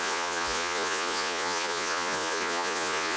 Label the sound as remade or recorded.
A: remade